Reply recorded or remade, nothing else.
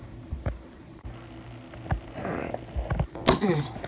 recorded